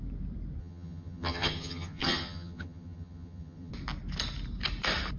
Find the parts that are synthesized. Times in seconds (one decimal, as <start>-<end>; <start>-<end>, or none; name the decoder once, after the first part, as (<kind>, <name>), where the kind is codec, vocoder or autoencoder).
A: 0.6-3.7 (vocoder, HiFi-GAN)